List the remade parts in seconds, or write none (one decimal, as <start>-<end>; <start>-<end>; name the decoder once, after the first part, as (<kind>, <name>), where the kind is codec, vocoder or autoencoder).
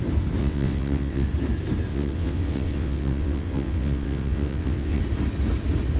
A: 0.4-1.3 (vocoder, WaveNeXt); 1.9-5.0